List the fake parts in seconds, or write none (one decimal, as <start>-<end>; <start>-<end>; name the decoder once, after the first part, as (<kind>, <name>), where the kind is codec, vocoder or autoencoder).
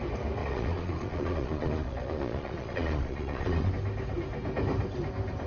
0.4-3.7 (vocoder, Vocos)